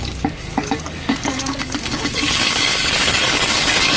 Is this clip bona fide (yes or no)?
no